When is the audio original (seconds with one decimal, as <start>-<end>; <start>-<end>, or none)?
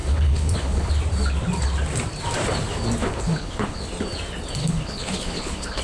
0.9-3.0; 3.8-4.6